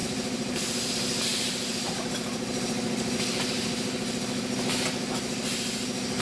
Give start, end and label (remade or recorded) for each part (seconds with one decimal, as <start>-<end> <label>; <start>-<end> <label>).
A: 0.0-0.9 remade; 0.9-6.2 recorded